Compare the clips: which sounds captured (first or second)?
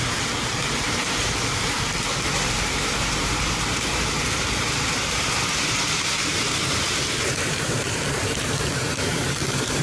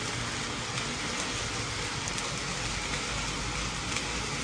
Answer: second